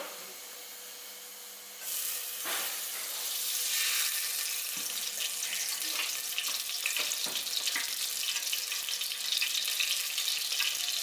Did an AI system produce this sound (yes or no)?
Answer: no